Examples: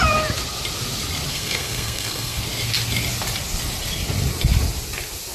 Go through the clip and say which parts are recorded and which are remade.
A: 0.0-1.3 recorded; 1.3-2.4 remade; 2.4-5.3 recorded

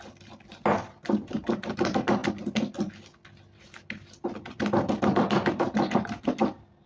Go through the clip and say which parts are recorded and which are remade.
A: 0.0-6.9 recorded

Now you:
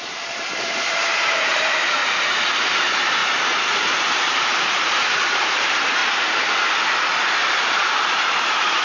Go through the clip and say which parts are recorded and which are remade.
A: 0.0-2.0 remade; 2.0-2.6 recorded; 2.6-3.2 remade; 3.2-4.0 recorded; 4.0-6.0 remade; 6.0-7.2 recorded; 7.2-8.8 remade

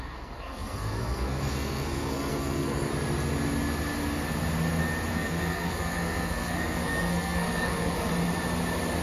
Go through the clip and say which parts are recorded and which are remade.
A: 0.0-2.9 remade; 2.9-5.1 recorded; 5.1-8.1 remade; 8.1-9.0 recorded

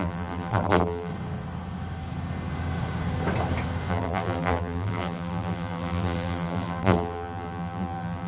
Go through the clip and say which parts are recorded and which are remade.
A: 0.0-1.1 remade; 1.1-3.9 recorded; 3.9-8.3 remade

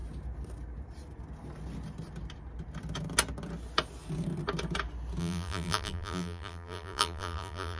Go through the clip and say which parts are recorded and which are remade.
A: 0.0-5.2 recorded; 5.2-7.8 remade